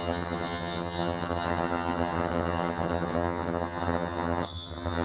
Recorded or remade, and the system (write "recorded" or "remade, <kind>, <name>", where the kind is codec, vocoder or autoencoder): remade, vocoder, HiFi-GAN